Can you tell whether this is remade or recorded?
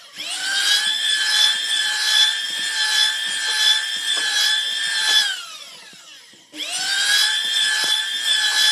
remade